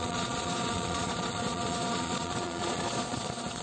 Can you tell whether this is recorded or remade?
remade